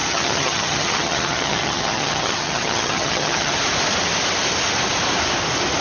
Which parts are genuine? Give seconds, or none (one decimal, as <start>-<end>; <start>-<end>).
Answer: 3.5-5.8